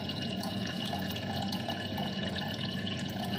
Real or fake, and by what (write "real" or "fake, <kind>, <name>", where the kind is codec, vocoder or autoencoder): fake, vocoder, Vocos